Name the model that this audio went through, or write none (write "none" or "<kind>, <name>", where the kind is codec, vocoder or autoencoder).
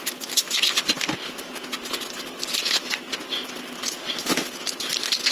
none